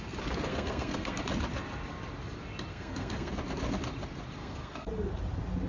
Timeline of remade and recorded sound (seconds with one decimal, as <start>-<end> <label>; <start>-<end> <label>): 0.0-0.5 recorded; 0.5-1.2 remade; 1.2-2.7 recorded; 2.7-3.3 remade; 3.3-4.4 recorded; 4.4-4.9 remade; 4.9-5.7 recorded